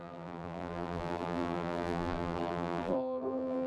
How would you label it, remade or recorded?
remade